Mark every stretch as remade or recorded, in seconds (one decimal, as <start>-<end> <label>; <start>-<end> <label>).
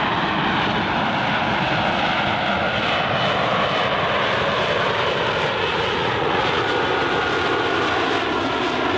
0.0-5.7 recorded; 5.7-6.6 remade; 6.6-9.0 recorded